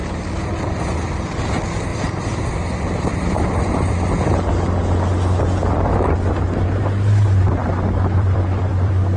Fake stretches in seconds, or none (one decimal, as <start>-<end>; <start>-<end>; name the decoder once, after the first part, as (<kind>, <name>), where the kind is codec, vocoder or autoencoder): 1.9-3.9 (vocoder, BigVGAN v2); 7.6-9.2

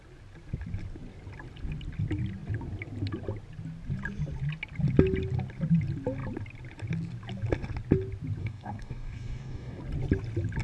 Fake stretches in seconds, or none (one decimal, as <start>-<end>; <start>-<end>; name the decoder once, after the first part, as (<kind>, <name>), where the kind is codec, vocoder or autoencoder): 8.4-9.8 (codec, DAC)

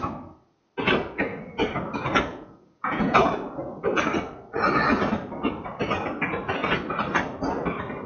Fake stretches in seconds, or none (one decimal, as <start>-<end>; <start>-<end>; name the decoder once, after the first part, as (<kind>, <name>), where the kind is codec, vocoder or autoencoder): 2.3-3.3 (vocoder, Vocos)